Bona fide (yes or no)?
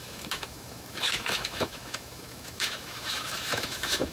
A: no